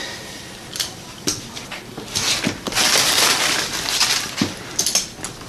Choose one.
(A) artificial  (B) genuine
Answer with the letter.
B